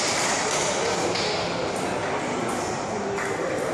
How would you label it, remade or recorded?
recorded